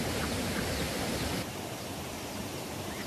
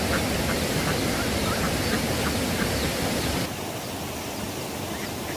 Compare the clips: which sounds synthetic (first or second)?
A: first